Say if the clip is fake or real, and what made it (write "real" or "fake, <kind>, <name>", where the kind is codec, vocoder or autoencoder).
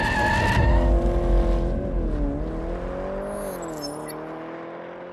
real